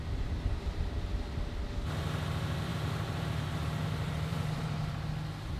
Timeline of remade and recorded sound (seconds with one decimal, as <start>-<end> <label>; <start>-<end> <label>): 0.0-2.7 recorded; 2.7-3.5 remade; 3.5-4.3 recorded; 4.3-4.9 remade; 4.9-5.6 recorded